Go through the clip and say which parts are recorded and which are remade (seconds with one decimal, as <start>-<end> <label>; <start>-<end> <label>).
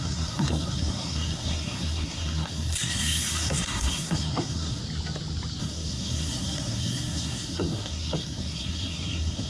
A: 0.0-4.8 remade; 4.8-5.6 recorded; 5.6-9.5 remade